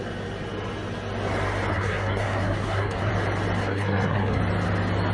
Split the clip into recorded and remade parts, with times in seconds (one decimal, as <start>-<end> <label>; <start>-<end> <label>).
0.0-1.7 recorded; 1.7-3.1 remade; 3.1-3.6 recorded; 3.6-4.4 remade; 4.4-5.1 recorded